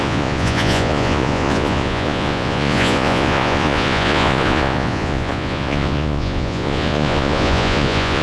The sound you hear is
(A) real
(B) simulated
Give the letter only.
B